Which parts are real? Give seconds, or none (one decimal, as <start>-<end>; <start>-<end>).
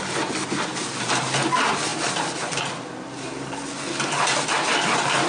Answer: 0.0-5.3